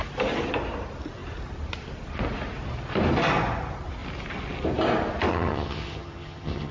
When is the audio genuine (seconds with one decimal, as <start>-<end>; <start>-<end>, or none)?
0.0-5.3